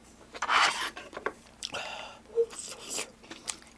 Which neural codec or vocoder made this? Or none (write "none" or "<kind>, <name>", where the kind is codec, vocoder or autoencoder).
vocoder, BigVGAN v2